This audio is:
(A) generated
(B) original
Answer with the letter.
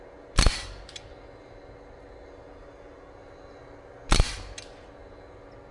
B